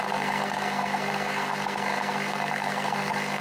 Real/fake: fake